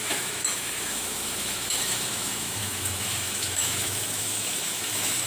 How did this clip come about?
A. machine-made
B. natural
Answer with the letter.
A